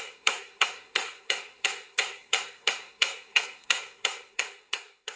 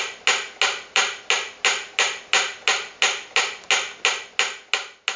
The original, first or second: second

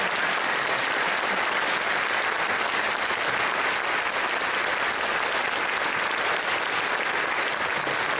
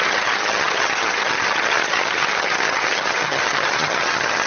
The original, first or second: first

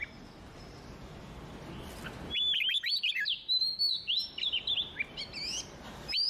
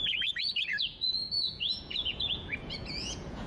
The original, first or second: first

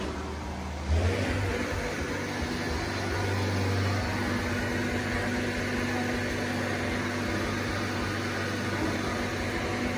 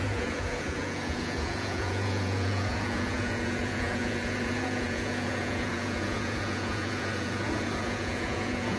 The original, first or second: first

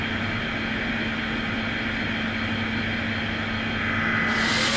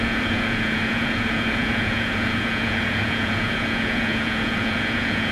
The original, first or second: first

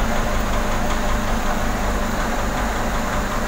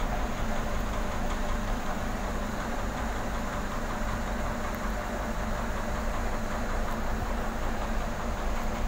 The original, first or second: first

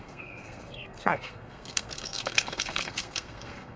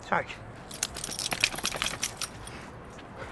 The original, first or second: second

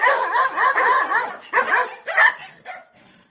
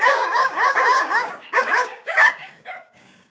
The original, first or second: first